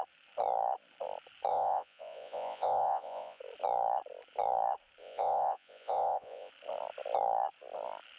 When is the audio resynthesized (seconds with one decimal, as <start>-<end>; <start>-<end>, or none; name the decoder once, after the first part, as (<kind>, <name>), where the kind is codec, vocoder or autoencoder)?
1.5-3.4 (vocoder, Vocos); 5.0-6.5